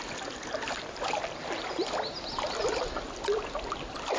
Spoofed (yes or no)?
no